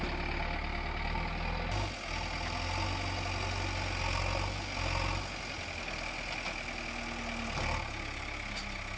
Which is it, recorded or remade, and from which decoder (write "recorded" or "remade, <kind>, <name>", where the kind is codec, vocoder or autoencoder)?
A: recorded